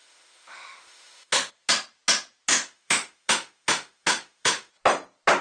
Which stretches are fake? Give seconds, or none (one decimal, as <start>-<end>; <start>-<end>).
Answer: 0.0-1.5; 2.5-4.7